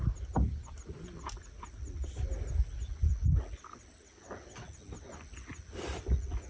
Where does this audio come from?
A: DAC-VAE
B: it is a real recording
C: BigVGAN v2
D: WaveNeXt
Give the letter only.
B